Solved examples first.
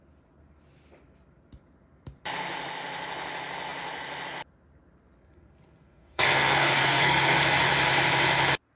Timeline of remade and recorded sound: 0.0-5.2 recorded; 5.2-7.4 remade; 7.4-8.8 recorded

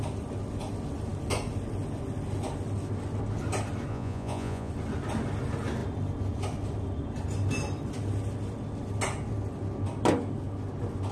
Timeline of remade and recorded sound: 0.0-3.9 recorded; 3.9-4.7 remade; 4.7-11.1 recorded

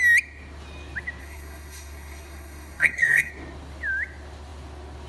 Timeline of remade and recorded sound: 0.0-1.2 recorded; 1.2-3.3 remade; 3.3-5.1 recorded

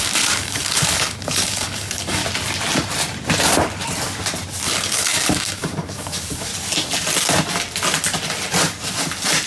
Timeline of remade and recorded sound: 0.0-2.2 remade; 2.2-4.6 recorded; 4.6-6.5 remade; 6.5-9.5 recorded

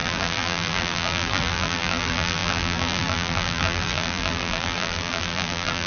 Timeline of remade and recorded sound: 0.0-5.9 remade

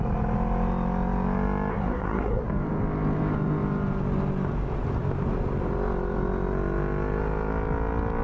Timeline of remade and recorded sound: 0.0-1.7 recorded; 1.7-2.4 remade; 2.4-8.2 recorded